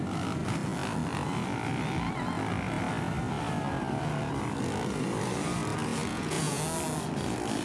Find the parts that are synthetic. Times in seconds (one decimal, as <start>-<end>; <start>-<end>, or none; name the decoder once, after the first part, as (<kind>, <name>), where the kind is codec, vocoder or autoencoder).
6.1-6.6 (vocoder, Vocos)